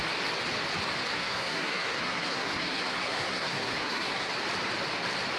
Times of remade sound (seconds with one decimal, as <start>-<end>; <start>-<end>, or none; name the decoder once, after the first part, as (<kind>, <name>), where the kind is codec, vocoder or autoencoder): 1.1-4.3 (codec, SNAC)